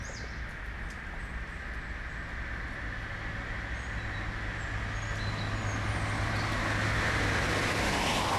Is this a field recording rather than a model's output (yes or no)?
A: yes